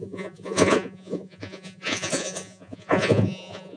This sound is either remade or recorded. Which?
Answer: remade